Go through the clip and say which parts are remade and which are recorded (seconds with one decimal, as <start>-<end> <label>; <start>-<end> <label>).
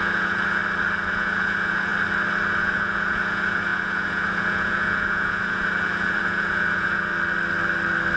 0.0-0.6 remade; 0.6-1.1 recorded; 1.1-1.9 remade; 1.9-2.6 recorded; 2.6-7.1 remade; 7.1-8.2 recorded